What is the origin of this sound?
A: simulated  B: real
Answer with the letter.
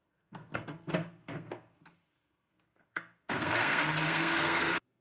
A